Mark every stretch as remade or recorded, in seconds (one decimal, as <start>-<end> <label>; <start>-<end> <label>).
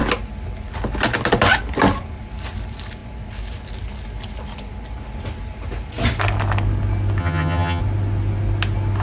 0.0-7.2 recorded; 7.2-7.8 remade; 7.8-9.0 recorded